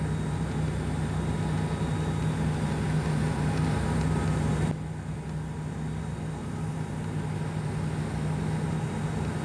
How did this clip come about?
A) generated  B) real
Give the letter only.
B